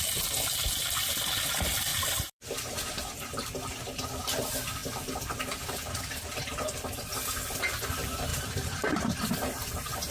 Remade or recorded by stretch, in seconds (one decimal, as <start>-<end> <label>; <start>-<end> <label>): 0.0-1.9 recorded; 1.9-3.4 remade; 3.4-8.3 recorded; 8.3-9.0 remade; 9.0-10.1 recorded